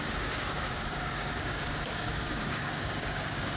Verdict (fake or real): fake